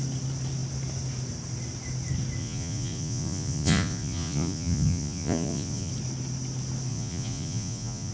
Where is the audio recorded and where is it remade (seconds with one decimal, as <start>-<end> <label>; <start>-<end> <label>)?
0.0-2.4 recorded; 2.4-5.9 remade; 5.9-6.9 recorded; 6.9-8.1 remade